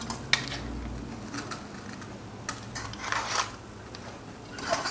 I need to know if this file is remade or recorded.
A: recorded